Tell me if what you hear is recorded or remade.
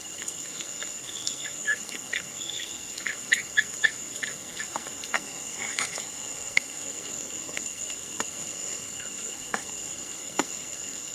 remade